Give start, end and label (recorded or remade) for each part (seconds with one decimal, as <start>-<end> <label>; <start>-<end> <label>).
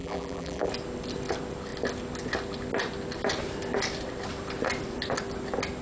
0.0-0.7 remade; 0.7-5.8 recorded